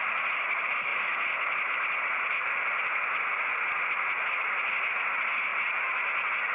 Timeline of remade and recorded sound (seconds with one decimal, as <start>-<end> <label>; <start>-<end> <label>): 0.0-6.5 recorded